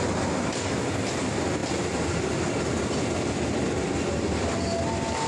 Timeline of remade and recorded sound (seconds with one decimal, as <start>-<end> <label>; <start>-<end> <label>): 0.0-5.3 recorded